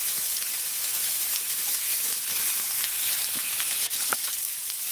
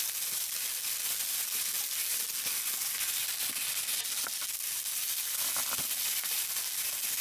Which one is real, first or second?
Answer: second